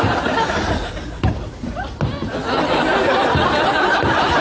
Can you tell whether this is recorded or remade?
recorded